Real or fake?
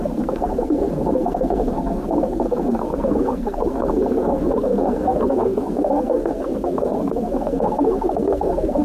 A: fake